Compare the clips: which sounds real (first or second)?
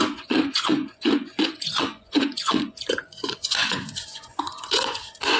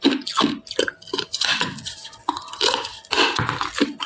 second